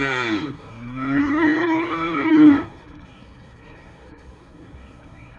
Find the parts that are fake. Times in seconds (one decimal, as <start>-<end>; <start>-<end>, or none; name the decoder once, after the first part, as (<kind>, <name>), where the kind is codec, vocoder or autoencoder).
0.0-5.4 (codec, SNAC)